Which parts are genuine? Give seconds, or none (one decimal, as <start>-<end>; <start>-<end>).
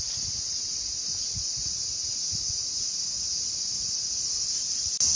0.0-5.2